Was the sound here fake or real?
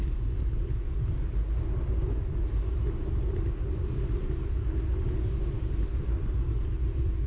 real